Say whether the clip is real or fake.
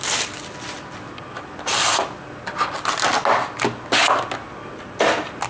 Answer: real